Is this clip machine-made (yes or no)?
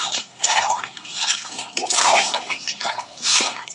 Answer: yes